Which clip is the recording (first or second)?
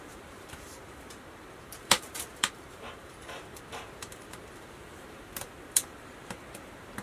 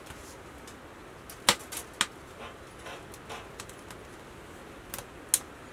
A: second